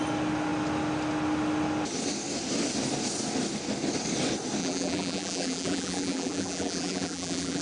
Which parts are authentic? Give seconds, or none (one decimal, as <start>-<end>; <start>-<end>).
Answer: 0.0-4.6

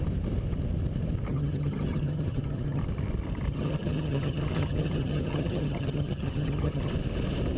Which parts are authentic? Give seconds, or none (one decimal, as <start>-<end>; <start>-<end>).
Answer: 0.0-1.3; 2.8-3.5; 6.9-7.6

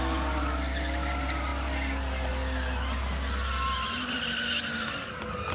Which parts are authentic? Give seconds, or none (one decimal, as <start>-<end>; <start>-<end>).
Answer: 0.0-5.5

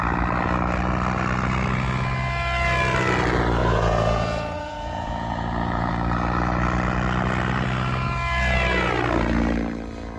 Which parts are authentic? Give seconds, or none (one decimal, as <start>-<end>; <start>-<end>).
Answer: 0.0-3.6; 5.9-10.2

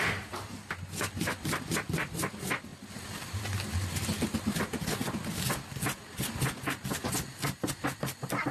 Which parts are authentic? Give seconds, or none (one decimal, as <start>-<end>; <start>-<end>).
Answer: 0.0-8.5

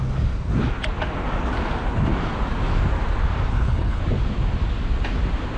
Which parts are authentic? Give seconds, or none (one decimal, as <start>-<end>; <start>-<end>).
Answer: 0.0-3.5; 4.0-5.6